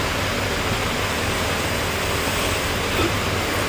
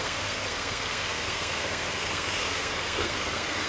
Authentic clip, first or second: first